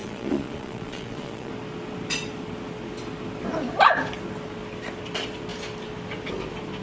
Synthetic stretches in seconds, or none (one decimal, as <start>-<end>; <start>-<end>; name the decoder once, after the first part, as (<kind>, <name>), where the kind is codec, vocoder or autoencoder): 0.0-1.5 (vocoder, Vocos)